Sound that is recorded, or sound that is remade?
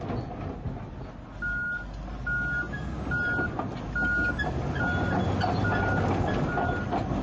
recorded